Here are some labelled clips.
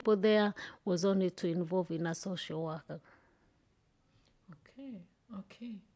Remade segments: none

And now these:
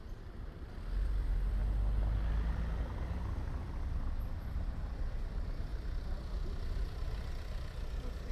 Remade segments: 0.0-1.6 (vocoder, BigVGAN v2); 3.5-5.7; 7.3-8.3

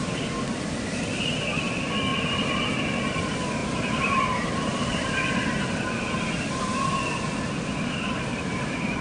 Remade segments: 3.6-5.4 (vocoder, BigVGAN v2)

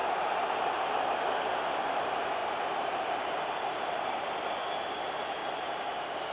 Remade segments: 0.0-1.0 (vocoder, BigVGAN v2); 2.4-4.6; 5.4-6.3

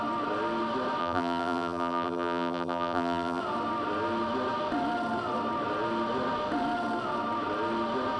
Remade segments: 1.0-3.4 (vocoder, BigVGAN v2)

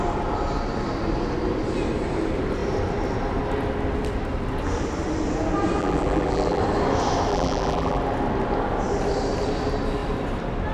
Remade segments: 5.8-6.6 (vocoder, BigVGAN v2); 7.3-8.0

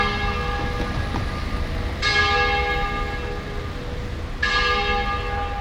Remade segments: none